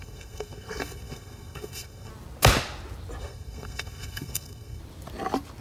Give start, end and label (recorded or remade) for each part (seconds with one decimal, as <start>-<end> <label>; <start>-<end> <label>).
0.0-2.1 remade; 2.1-3.2 recorded; 3.2-4.8 remade; 4.8-5.6 recorded